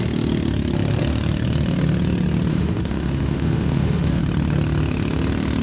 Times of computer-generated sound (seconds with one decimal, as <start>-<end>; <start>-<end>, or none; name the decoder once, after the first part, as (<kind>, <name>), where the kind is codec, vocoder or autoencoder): 2.5-4.2 (autoencoder, DAC-VAE)